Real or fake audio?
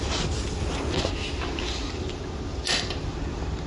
real